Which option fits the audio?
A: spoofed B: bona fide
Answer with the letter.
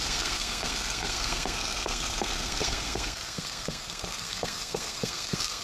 A